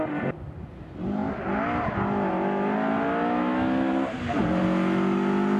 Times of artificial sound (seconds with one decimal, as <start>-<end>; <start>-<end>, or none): none